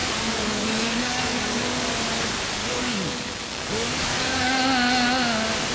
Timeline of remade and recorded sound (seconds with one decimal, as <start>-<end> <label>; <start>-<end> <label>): 0.0-1.9 remade; 1.9-2.6 recorded; 2.6-4.6 remade; 4.6-5.7 recorded

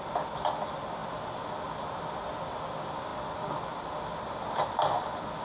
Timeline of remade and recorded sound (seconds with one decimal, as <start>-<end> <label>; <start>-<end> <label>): 0.0-5.4 recorded

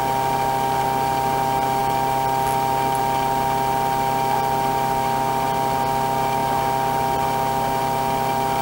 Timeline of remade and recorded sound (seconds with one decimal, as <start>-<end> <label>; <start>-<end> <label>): 0.0-8.6 recorded

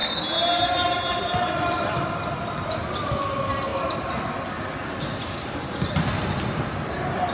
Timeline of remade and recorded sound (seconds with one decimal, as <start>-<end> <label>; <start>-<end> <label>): 0.0-7.3 recorded

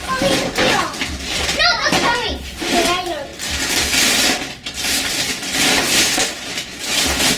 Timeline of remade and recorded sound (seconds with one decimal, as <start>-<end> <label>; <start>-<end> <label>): 0.0-7.4 recorded

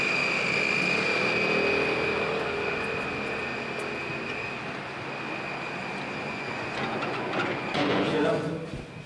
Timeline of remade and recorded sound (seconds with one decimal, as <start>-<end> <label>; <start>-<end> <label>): 0.0-6.2 recorded; 6.2-8.5 remade; 8.5-9.1 recorded

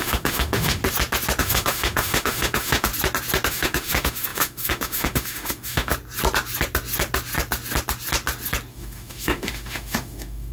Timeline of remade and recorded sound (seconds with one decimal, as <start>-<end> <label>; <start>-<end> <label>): 0.0-0.8 remade; 0.8-1.4 recorded; 1.4-2.9 remade; 2.9-3.5 recorded; 3.5-5.9 remade; 5.9-8.7 recorded; 8.7-10.5 remade